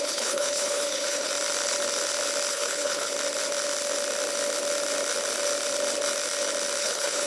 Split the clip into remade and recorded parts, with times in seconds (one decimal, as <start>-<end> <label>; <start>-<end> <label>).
0.0-1.3 remade; 1.3-2.5 recorded; 2.5-3.1 remade; 3.1-6.8 recorded; 6.8-7.3 remade